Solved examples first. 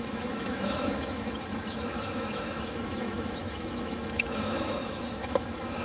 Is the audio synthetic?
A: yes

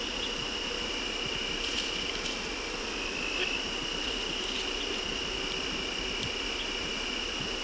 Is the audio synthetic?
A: no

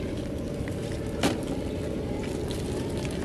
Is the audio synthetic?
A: no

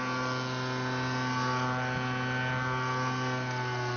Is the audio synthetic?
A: no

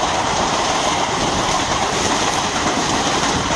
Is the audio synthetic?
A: yes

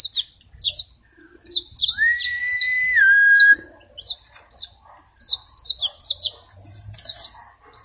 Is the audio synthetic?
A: no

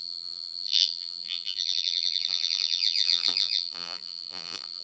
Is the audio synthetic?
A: yes